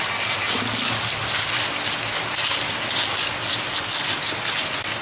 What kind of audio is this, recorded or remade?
recorded